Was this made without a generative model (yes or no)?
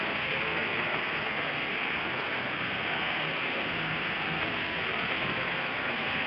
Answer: no